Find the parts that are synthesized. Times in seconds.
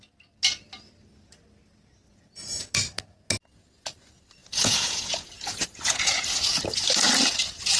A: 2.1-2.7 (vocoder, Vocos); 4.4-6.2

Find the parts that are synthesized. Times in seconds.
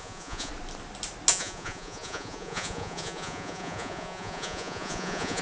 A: 0.0-0.5 (vocoder, Vocos); 1.3-5.4